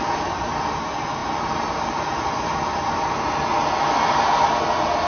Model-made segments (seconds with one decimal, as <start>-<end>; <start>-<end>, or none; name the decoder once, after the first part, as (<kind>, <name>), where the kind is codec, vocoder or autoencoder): none